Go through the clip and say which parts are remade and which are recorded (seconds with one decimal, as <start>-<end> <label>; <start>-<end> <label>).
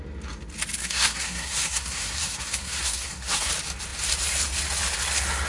0.0-0.8 recorded; 0.8-3.5 remade; 3.5-5.5 recorded